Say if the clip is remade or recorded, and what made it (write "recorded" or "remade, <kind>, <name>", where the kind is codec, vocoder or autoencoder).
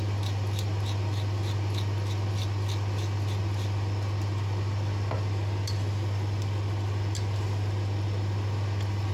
recorded